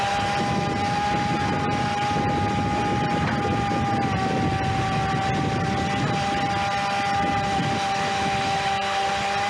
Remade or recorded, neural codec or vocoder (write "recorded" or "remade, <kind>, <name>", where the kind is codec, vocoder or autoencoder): recorded